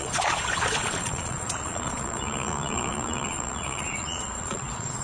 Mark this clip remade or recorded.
remade